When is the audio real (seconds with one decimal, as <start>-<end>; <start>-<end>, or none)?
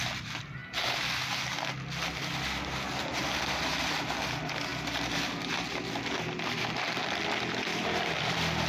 0.0-8.7